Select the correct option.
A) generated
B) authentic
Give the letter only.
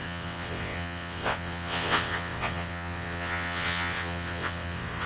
A